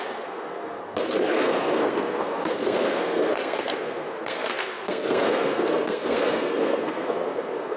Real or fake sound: fake